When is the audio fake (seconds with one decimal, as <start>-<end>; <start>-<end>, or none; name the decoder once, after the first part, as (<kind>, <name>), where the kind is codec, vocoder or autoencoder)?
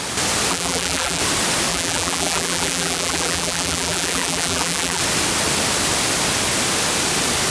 0.5-1.2 (vocoder, BigVGAN v2); 1.7-5.0